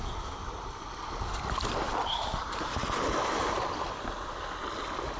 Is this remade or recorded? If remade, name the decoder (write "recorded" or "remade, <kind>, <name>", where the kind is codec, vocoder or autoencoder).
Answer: recorded